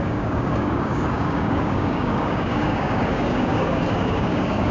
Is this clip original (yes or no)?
no